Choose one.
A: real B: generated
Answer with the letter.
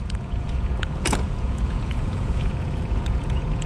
B